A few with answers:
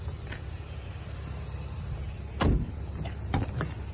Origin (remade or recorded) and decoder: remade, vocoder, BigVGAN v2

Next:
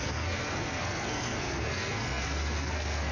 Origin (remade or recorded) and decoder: remade, codec, SNAC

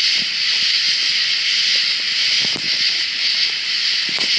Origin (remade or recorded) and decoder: recorded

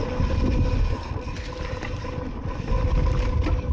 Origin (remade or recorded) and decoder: remade, vocoder, BigVGAN v2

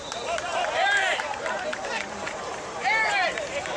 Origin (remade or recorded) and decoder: remade, vocoder, BigVGAN v2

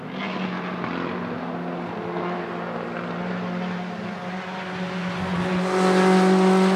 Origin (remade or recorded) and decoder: recorded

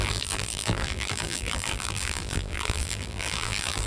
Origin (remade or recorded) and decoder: remade, vocoder, BigVGAN v2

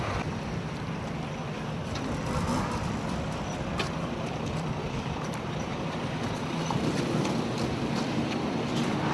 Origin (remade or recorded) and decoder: remade, vocoder, BigVGAN v2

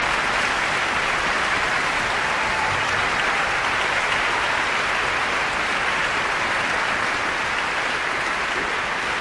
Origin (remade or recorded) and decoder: recorded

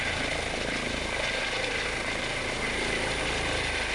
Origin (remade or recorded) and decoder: recorded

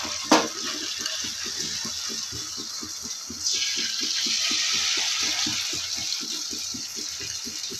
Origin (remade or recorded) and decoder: recorded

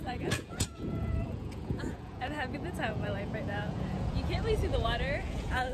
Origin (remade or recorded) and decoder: remade, vocoder, Vocos